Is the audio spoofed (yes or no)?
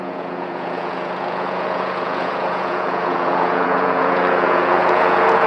yes